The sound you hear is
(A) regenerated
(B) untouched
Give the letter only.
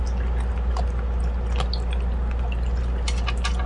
B